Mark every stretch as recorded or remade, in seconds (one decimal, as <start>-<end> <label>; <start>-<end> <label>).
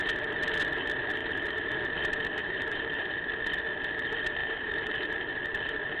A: 0.0-1.2 recorded; 1.2-1.8 remade; 1.8-2.4 recorded; 2.4-3.1 remade; 3.1-4.4 recorded; 4.4-5.3 remade; 5.3-6.0 recorded